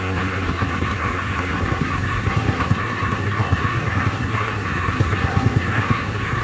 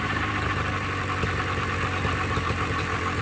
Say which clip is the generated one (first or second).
first